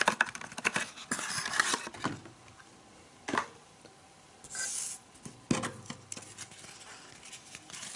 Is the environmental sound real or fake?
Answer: real